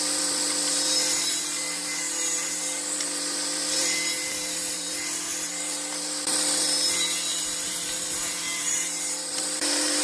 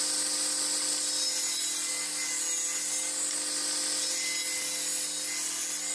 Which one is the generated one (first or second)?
first